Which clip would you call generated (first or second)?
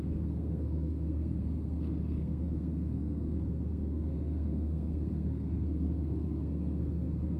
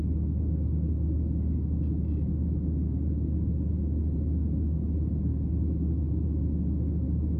first